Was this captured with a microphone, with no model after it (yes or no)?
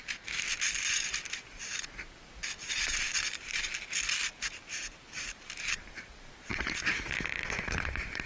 no